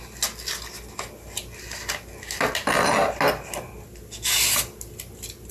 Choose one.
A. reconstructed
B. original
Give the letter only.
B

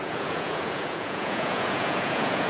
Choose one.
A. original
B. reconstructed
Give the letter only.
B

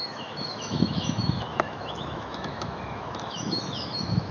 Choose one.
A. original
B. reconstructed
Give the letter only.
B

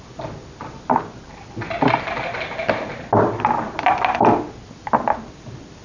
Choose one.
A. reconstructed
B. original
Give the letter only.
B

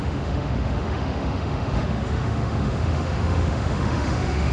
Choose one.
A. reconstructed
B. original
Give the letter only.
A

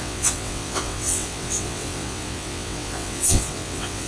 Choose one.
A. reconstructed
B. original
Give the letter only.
A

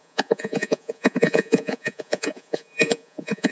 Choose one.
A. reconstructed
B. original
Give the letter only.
A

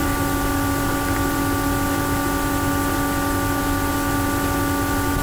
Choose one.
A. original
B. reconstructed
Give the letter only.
A